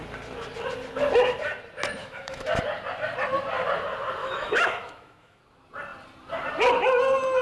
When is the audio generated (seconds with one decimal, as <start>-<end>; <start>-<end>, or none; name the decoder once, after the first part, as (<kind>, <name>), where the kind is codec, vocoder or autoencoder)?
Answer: 2.0-2.6 (autoencoder, DAC-VAE); 4.2-5.4